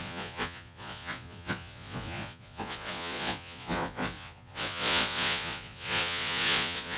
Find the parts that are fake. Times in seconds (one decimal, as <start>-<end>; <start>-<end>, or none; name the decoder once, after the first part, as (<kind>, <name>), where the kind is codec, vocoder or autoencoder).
0.0-7.0 (vocoder, Vocos)